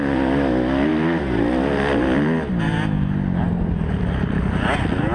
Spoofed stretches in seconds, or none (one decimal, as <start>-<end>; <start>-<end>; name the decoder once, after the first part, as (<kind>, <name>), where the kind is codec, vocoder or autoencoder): none